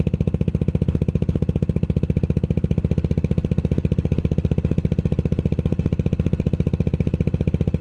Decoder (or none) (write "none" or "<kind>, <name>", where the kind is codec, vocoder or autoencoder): none